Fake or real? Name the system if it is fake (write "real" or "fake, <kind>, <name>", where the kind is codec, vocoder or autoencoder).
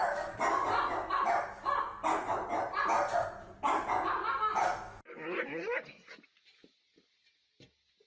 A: real